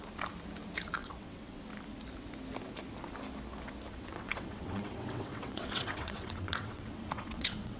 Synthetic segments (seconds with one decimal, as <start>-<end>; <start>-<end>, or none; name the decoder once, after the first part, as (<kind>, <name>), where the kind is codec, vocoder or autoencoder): 1.0-1.6 (vocoder, WaveNeXt); 3.9-7.8